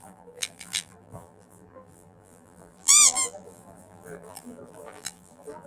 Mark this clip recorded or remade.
remade